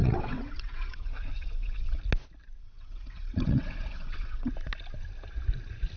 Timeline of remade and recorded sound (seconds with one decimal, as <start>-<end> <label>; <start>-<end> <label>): 0.0-2.0 remade; 2.0-2.6 recorded; 2.6-4.5 remade; 4.5-6.0 recorded